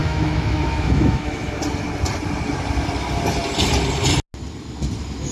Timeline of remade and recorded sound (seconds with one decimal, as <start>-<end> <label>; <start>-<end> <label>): 0.0-1.6 remade; 1.6-5.3 recorded